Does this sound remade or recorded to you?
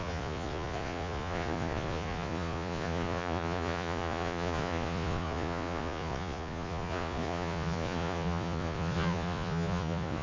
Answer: remade